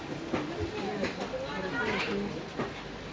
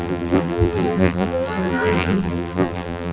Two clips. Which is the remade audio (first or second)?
second